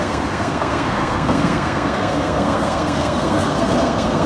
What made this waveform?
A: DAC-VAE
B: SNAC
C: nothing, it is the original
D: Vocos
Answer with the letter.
B